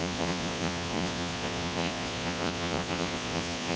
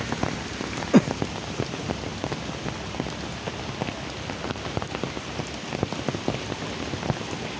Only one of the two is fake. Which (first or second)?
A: first